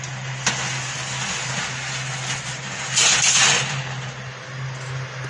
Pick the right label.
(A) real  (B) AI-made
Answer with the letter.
A